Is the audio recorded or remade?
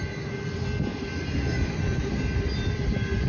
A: recorded